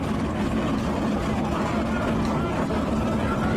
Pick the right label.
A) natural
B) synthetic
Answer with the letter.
A